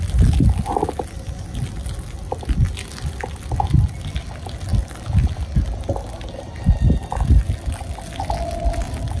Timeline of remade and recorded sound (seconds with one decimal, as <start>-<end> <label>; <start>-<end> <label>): 0.0-9.2 recorded